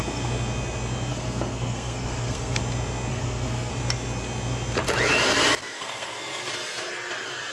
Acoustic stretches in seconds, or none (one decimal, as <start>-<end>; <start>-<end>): 0.0-1.1; 2.6-3.1; 3.7-5.6; 6.5-7.5